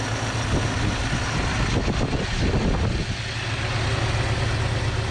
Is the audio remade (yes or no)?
no